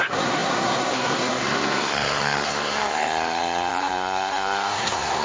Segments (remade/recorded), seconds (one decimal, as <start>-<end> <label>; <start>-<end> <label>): 0.0-5.2 remade